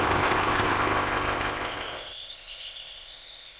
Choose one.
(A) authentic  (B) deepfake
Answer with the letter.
B